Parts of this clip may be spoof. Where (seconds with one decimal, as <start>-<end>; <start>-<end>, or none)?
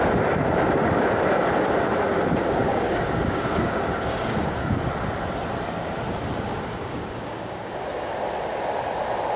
2.6-4.8; 6.5-7.8